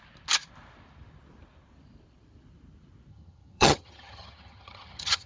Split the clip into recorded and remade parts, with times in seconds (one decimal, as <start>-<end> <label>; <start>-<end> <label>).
0.0-3.1 recorded; 3.1-5.3 remade